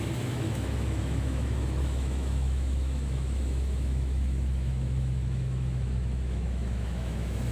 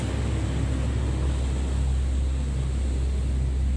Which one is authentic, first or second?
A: second